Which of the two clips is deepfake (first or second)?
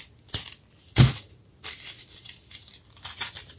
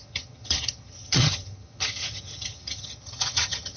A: second